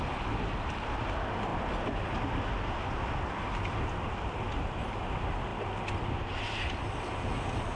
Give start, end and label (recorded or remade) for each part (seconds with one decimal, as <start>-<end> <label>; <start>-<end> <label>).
0.0-7.7 recorded